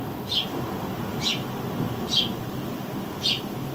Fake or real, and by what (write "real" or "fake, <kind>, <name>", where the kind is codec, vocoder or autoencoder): real